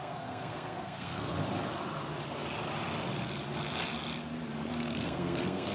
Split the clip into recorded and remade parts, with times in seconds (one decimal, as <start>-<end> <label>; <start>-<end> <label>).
0.0-1.3 remade; 1.3-4.7 recorded; 4.7-5.7 remade